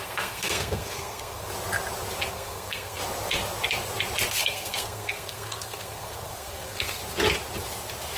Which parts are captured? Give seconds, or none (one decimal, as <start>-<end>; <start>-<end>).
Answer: 1.5-2.3; 3.0-4.3; 7.0-8.2